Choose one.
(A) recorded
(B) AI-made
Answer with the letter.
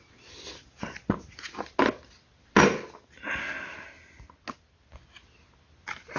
A